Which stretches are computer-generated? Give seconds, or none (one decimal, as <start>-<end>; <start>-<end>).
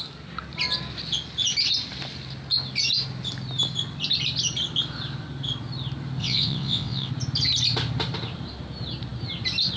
6.2-7.1